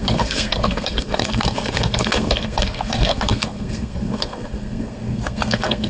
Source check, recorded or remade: remade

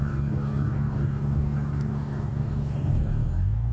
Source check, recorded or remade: remade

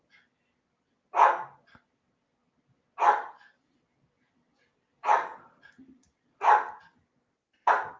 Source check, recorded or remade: recorded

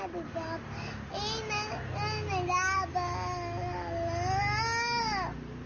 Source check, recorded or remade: recorded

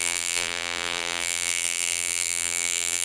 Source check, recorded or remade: remade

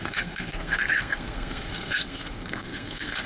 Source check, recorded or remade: remade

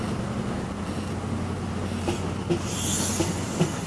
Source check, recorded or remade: recorded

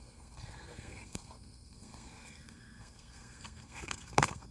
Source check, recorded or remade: remade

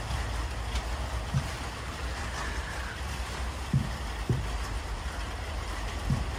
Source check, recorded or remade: recorded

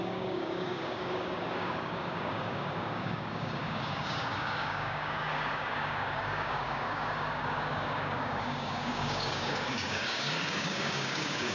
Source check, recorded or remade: remade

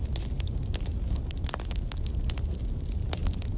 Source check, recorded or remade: recorded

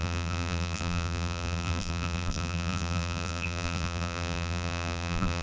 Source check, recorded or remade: remade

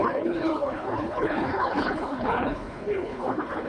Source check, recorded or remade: remade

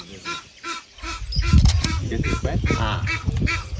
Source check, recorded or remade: recorded